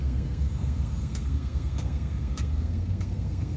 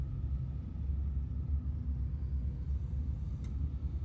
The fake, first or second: first